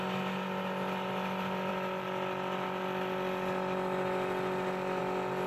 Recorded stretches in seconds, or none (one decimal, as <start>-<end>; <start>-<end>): 0.0-5.5